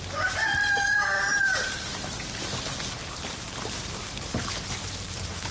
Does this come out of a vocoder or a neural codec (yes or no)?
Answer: yes